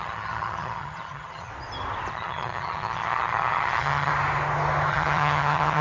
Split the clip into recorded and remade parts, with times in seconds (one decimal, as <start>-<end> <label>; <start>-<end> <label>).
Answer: 0.0-1.5 remade; 1.5-2.1 recorded; 2.1-4.1 remade; 4.1-4.9 recorded; 4.9-5.8 remade